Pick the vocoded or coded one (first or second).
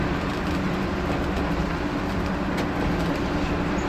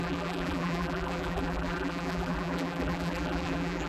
second